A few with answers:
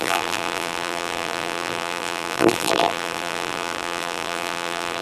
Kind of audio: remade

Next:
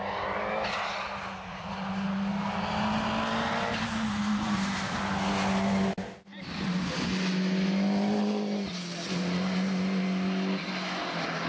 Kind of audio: recorded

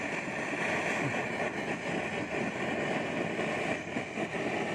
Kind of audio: recorded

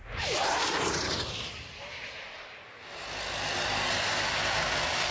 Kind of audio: recorded